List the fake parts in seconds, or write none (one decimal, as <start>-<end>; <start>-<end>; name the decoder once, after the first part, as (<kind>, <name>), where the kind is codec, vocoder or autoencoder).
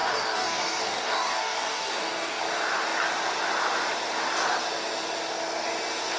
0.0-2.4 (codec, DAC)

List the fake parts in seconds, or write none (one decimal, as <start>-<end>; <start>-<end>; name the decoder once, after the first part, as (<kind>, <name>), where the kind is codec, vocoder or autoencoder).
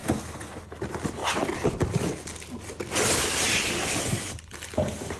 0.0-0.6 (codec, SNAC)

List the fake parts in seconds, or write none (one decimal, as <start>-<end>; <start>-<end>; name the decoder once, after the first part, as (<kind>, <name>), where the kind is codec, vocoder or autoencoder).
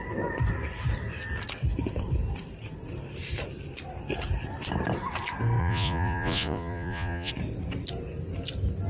5.6-7.3 (vocoder, Vocos)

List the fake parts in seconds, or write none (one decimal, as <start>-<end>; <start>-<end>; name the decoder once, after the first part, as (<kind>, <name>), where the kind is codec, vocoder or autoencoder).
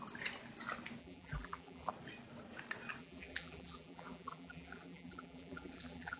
1.0-1.9 (vocoder, BigVGAN v2); 3.0-6.2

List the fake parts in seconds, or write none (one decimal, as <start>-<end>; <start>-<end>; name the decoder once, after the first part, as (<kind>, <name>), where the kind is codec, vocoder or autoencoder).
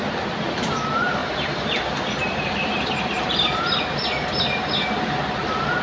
1.2-4.7 (vocoder, BigVGAN v2)